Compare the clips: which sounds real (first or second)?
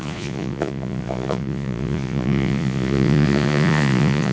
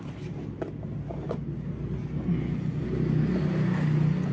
second